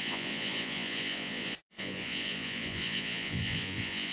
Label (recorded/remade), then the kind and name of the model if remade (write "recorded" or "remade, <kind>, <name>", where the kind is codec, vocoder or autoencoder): remade, vocoder, Vocos